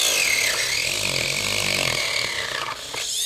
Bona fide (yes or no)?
yes